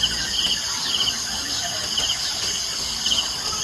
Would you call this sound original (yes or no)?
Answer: yes